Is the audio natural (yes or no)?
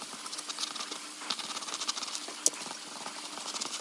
yes